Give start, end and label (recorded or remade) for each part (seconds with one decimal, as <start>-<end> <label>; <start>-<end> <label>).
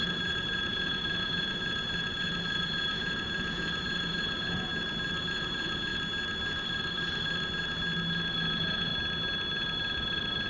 0.0-4.7 remade; 4.7-5.3 recorded; 5.3-5.9 remade; 5.9-8.4 recorded; 8.4-8.9 remade; 8.9-10.5 recorded